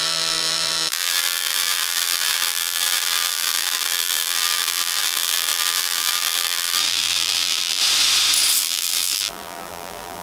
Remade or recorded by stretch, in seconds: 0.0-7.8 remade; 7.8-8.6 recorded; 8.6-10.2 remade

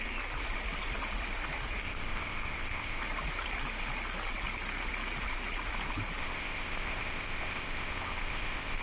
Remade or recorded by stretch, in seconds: 0.0-1.8 recorded; 1.8-3.0 remade; 3.0-6.2 recorded; 6.2-8.8 remade

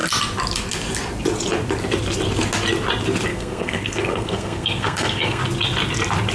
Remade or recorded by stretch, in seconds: 0.0-3.3 recorded; 3.3-5.4 remade; 5.4-6.3 recorded

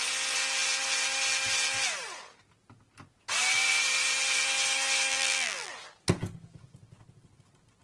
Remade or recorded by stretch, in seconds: 0.0-5.1 recorded; 5.1-5.7 remade; 5.7-7.8 recorded

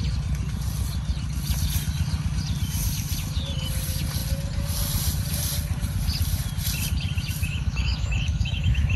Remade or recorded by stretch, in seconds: 0.0-7.4 recorded; 7.4-9.0 remade

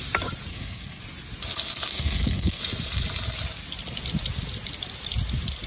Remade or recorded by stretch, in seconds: 0.0-0.5 recorded; 0.5-1.0 remade; 1.0-1.9 recorded; 1.9-2.6 remade; 2.6-5.7 recorded

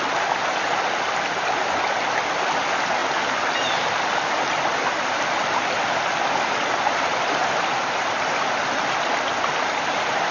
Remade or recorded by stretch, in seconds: 0.0-10.3 recorded